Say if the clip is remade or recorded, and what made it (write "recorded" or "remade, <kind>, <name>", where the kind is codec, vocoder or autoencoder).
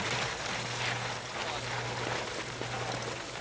recorded